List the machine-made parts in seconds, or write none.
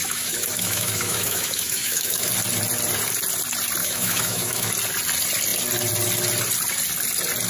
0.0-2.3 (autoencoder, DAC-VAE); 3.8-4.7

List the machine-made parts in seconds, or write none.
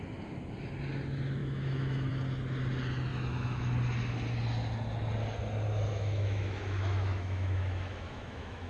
1.4-2.1 (autoencoder, DAC-VAE); 3.1-3.6; 5.9-8.7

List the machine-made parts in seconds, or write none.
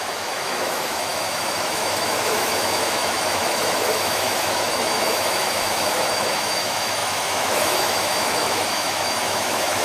0.0-9.8 (autoencoder, DAC-VAE)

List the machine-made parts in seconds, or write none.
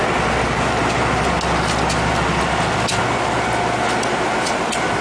none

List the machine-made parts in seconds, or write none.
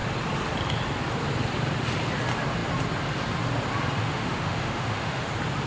4.0-5.3 (autoencoder, DAC-VAE)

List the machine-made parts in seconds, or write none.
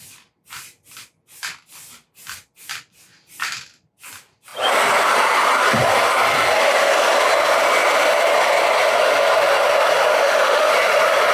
10.1-10.7 (autoencoder, DAC-VAE)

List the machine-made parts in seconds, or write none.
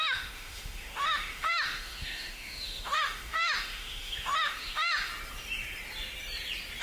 0.0-5.1 (autoencoder, DAC-VAE)